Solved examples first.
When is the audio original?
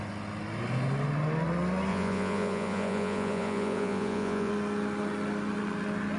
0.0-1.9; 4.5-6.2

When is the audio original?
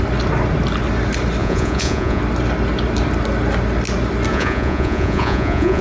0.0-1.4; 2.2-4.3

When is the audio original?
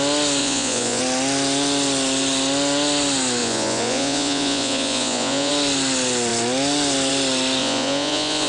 0.0-0.4; 1.0-3.4; 5.5-7.6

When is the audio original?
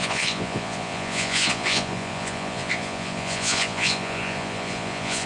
none